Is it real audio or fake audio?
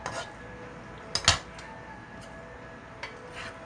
real